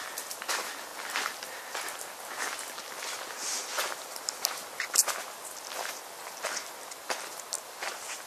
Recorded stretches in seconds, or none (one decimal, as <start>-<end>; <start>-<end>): 0.0-8.3